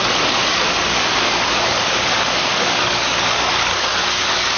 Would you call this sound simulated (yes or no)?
yes